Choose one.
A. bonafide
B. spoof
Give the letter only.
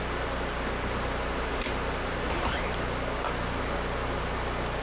A